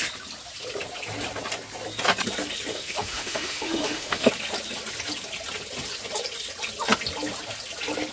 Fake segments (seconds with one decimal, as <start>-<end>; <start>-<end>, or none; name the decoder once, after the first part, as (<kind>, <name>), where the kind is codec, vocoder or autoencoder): 2.7-4.3 (autoencoder, DAC-VAE)